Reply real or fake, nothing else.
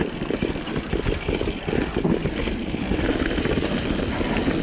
real